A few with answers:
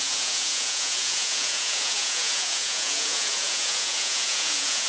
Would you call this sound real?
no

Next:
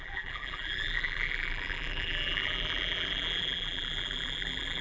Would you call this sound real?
no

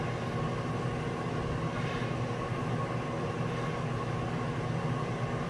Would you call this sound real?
yes